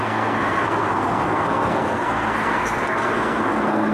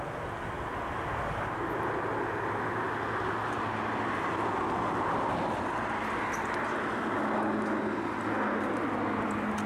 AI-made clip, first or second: first